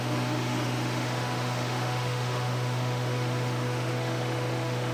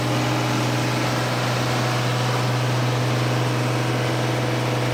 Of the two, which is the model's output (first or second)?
first